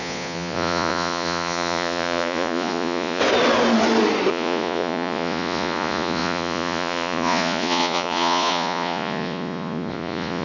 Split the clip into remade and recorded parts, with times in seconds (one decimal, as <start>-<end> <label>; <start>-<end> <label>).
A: 0.0-3.2 remade; 3.2-4.3 recorded; 4.3-10.4 remade